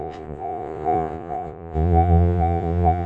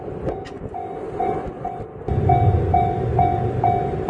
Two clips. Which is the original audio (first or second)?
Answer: second